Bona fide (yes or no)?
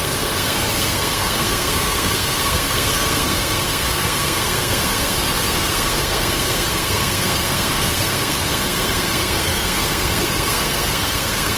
no